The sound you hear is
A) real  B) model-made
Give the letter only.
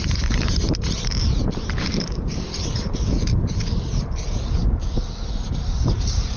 B